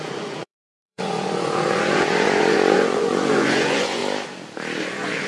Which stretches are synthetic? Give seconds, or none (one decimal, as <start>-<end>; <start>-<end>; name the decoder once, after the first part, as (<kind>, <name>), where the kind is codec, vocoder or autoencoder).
0.0-4.0 (vocoder, Vocos); 4.8-5.3